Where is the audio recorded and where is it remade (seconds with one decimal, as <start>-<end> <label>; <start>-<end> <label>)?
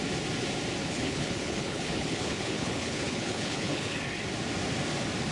0.0-0.8 recorded; 0.8-4.0 remade; 4.0-5.3 recorded